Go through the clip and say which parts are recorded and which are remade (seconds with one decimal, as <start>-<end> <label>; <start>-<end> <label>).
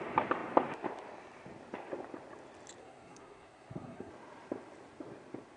0.0-2.8 recorded; 2.8-4.1 remade; 4.1-5.6 recorded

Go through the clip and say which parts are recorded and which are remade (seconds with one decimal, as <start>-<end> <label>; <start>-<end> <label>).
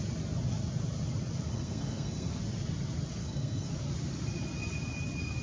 0.0-1.5 recorded; 1.5-2.3 remade; 2.3-3.2 recorded; 3.2-3.7 remade; 3.7-5.4 recorded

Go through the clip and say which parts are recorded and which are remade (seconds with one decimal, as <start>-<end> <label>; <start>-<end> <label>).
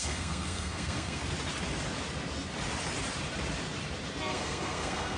0.0-1.2 remade; 1.2-4.3 recorded; 4.3-5.2 remade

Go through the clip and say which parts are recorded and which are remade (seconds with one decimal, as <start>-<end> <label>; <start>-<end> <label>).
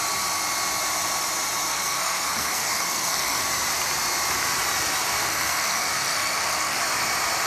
0.0-1.7 recorded; 1.7-3.4 remade; 3.4-5.2 recorded; 5.2-6.8 remade; 6.8-7.5 recorded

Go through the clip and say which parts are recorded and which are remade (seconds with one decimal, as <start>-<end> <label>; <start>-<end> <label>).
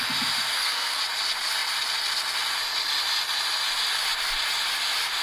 0.0-0.5 recorded; 0.5-1.0 remade; 1.0-5.2 recorded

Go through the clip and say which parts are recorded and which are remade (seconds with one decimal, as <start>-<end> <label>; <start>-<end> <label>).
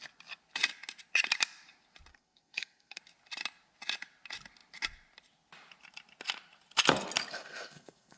0.0-2.1 recorded; 2.1-3.0 remade; 3.0-7.3 recorded; 7.3-8.2 remade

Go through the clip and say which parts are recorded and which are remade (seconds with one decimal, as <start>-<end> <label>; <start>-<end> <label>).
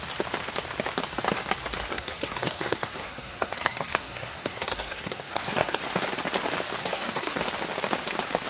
0.0-1.9 recorded; 1.9-5.8 remade; 5.8-6.8 recorded; 6.8-7.4 remade; 7.4-8.5 recorded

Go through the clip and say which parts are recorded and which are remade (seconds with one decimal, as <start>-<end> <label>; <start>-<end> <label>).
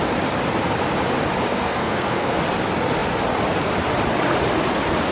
0.0-1.5 recorded; 1.5-2.4 remade; 2.4-5.1 recorded